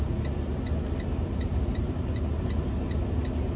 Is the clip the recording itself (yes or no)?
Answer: yes